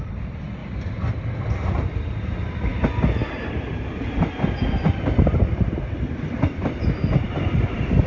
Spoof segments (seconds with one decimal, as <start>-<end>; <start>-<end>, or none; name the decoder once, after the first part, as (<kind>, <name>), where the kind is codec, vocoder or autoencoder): 0.0-0.6 (vocoder, BigVGAN v2); 1.1-2.7; 4.0-8.1